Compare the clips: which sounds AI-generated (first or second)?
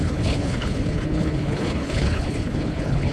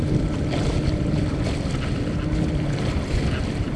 first